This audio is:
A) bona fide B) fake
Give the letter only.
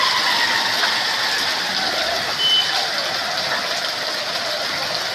A